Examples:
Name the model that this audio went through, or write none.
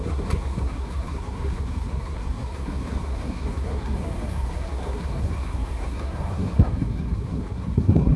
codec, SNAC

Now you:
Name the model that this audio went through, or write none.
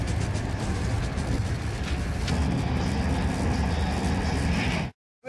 none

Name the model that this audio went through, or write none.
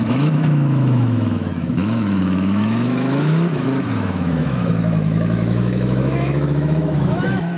autoencoder, DAC-VAE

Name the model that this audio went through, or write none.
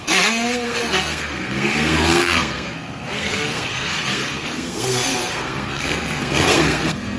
codec, SNAC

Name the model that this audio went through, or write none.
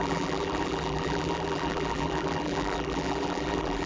vocoder, BigVGAN v2